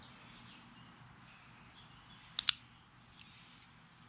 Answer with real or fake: real